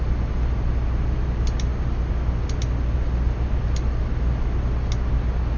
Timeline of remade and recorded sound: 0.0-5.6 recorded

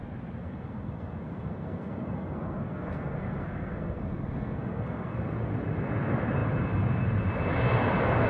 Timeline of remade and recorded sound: 0.0-0.4 recorded; 0.4-5.2 remade; 5.2-8.3 recorded